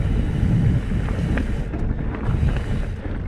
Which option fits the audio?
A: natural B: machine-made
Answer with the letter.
A